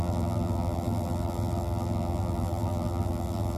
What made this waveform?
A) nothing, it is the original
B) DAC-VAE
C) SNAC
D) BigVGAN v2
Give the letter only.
D